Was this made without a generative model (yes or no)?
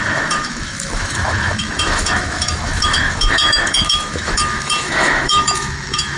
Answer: no